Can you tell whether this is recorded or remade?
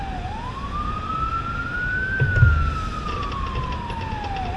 recorded